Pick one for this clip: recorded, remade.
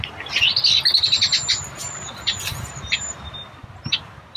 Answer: recorded